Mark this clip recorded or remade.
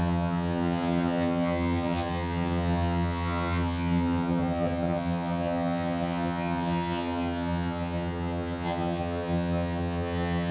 remade